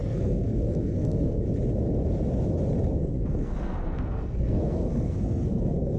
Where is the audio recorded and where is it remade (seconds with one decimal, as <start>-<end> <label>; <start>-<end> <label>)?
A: 0.0-1.4 remade; 1.4-3.0 recorded; 3.0-6.0 remade